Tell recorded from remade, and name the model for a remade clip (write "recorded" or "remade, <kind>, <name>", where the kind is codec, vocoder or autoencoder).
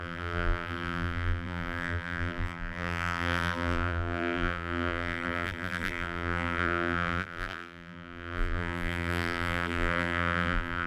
remade, vocoder, BigVGAN v2